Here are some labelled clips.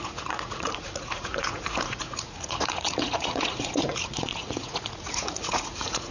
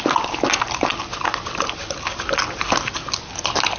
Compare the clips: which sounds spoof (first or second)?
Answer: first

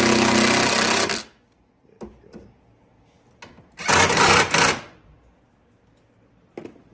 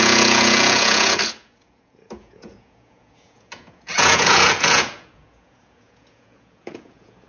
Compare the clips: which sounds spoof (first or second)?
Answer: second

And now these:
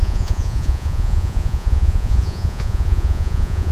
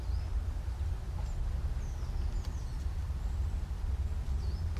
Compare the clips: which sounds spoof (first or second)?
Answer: first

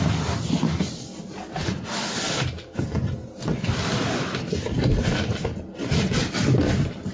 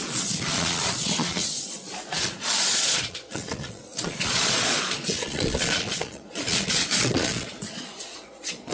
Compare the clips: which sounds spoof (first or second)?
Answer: second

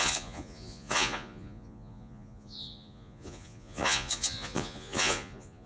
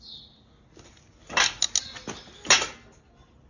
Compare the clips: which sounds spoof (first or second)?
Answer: first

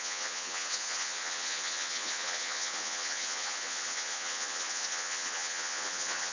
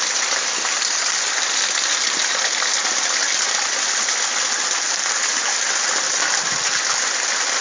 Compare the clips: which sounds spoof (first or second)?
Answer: first